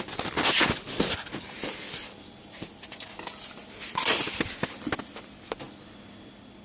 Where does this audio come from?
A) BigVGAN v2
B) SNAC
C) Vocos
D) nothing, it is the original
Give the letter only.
D